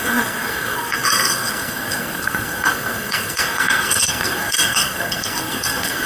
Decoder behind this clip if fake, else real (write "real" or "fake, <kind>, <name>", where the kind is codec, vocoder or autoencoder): fake, codec, SNAC